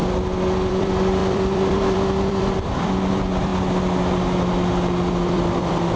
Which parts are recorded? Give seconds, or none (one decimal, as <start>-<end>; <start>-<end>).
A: 0.0-0.7; 3.5-5.1